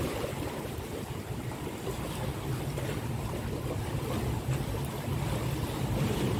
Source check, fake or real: real